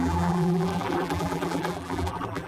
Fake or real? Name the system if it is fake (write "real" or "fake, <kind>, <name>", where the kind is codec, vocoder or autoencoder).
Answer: fake, vocoder, BigVGAN v2